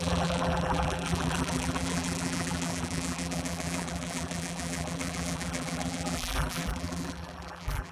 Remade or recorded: remade